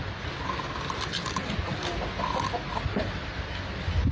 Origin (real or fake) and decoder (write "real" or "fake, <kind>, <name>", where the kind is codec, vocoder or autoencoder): real